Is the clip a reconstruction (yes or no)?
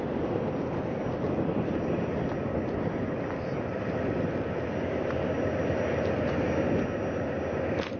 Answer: no